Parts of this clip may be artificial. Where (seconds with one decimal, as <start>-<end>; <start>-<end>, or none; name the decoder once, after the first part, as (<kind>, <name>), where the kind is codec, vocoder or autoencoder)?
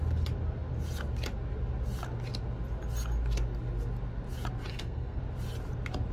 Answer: 4.7-5.2 (codec, SNAC)